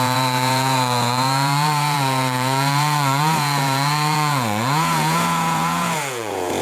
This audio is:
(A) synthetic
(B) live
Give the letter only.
A